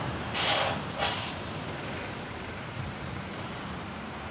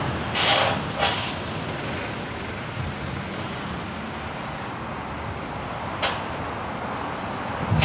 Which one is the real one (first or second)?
second